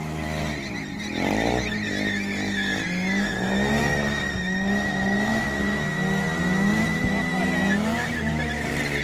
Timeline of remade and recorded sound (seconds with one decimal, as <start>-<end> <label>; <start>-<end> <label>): 0.0-9.0 recorded